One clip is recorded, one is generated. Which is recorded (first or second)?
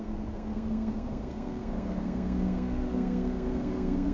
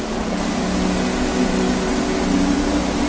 second